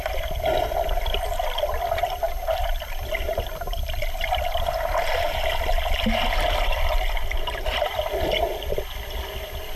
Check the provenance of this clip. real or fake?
real